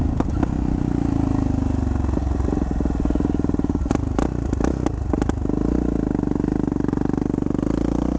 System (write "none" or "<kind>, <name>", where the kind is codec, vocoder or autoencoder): none